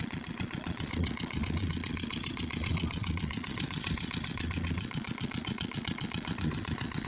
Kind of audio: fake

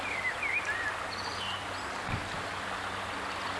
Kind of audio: real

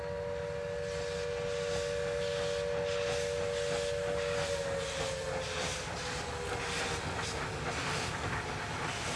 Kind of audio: real